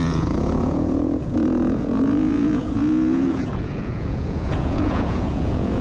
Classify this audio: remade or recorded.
remade